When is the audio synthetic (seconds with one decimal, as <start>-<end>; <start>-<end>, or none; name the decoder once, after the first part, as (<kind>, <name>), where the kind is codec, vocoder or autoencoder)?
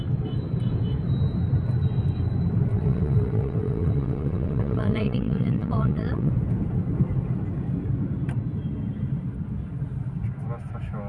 2.7-6.3 (vocoder, WaveNeXt)